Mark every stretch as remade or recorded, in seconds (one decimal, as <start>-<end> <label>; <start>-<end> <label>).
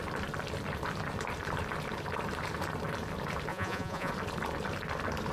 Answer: 0.0-3.5 recorded; 3.5-4.1 remade; 4.1-5.3 recorded